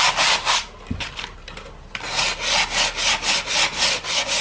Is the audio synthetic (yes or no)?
no